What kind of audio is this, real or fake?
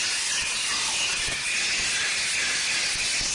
real